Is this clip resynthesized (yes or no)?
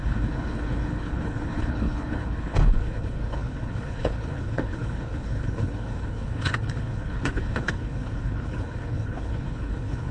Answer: yes